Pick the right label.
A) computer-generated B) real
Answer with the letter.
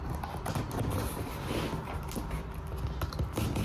B